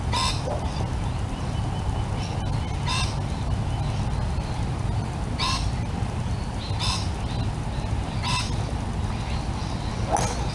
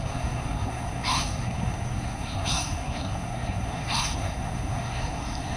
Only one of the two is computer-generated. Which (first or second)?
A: second